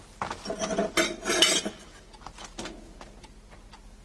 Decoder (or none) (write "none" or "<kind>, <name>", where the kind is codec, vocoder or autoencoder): none